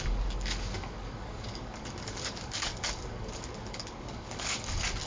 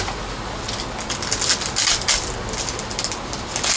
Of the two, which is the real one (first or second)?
second